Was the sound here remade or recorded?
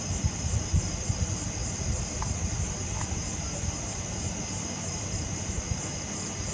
recorded